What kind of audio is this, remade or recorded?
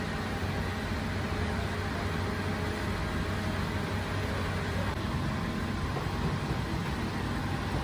recorded